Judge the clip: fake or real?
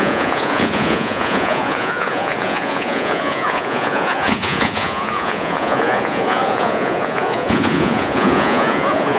fake